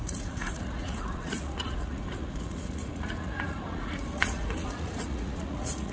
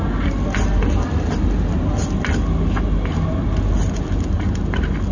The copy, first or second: first